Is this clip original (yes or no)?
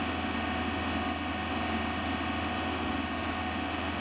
yes